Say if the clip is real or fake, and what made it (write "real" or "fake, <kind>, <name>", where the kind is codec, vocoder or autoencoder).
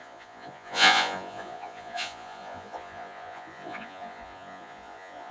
fake, vocoder, Vocos